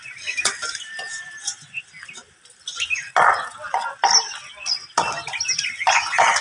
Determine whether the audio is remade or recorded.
recorded